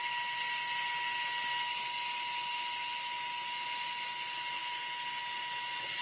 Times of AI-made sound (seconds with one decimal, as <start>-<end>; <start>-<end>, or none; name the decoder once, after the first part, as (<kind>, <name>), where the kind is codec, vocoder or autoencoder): none